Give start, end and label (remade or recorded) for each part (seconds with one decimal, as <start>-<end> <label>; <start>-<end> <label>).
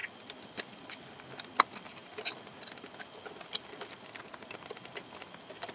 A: 0.0-5.7 recorded